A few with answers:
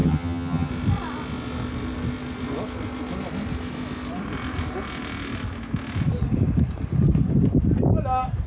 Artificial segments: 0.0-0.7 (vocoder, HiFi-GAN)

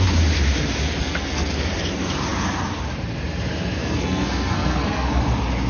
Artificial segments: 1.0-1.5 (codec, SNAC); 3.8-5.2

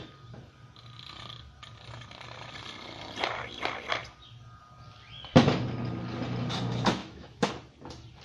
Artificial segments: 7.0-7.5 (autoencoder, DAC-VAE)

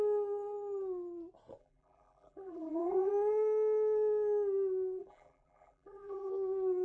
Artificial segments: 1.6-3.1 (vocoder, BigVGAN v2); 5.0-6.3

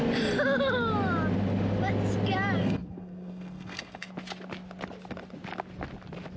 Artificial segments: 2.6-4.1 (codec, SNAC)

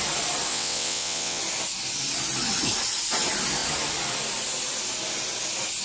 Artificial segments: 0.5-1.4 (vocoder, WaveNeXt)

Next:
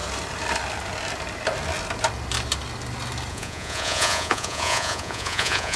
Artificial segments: 3.3-5.8 (vocoder, Vocos)

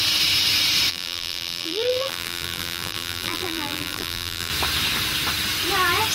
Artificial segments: 0.9-4.5 (vocoder, BigVGAN v2)